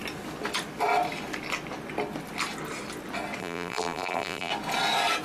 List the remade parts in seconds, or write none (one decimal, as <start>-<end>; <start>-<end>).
3.4-4.5